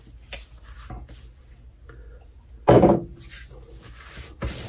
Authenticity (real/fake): real